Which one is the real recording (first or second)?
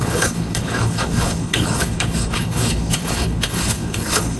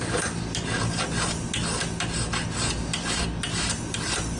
second